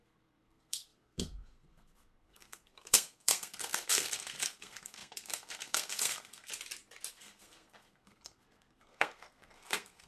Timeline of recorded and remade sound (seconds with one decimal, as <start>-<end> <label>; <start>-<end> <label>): 0.0-6.5 remade; 6.5-7.1 recorded; 7.1-10.1 remade